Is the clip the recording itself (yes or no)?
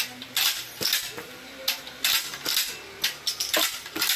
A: yes